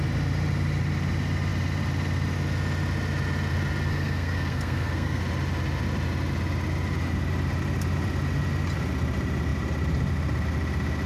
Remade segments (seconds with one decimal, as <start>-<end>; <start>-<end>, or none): 3.9-5.2